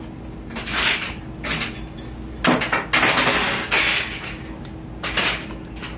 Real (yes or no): yes